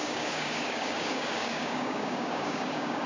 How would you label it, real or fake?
fake